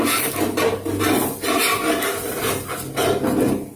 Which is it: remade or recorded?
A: recorded